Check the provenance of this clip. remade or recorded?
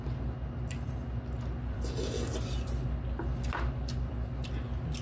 recorded